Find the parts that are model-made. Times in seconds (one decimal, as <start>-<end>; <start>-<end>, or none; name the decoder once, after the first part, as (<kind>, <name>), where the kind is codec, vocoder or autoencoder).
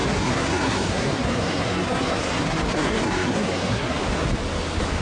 0.0-4.0 (codec, SNAC)